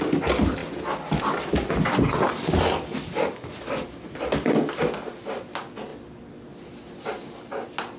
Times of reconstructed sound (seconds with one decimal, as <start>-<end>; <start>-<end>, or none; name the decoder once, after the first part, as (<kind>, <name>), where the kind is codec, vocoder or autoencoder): none